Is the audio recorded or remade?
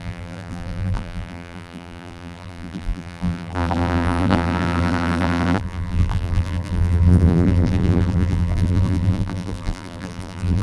remade